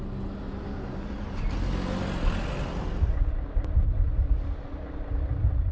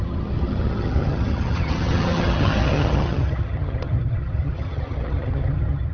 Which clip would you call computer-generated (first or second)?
second